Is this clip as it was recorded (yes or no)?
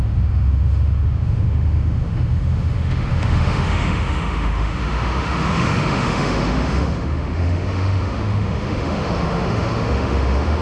no